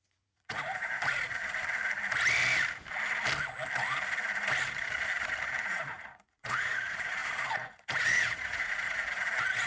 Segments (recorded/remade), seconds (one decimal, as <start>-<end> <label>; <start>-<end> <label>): 0.0-1.4 remade; 1.4-5.6 recorded; 5.6-9.7 remade